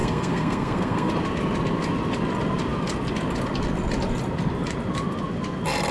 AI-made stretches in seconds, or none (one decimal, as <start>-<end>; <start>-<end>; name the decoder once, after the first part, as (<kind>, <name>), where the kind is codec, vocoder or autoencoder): 0.0-1.1 (codec, SNAC)